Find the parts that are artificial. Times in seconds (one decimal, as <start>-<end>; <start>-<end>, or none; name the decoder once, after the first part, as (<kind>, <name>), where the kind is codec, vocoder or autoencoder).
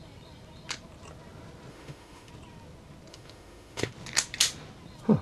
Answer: 1.7-2.3 (autoencoder, DAC-VAE); 3.1-3.9